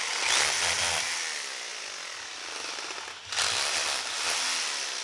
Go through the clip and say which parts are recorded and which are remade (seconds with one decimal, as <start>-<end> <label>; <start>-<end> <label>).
0.0-5.0 recorded